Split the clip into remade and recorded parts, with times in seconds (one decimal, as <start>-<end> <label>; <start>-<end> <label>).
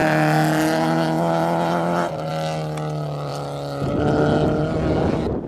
0.0-5.5 recorded